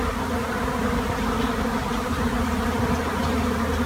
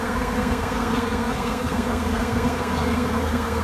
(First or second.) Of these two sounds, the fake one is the second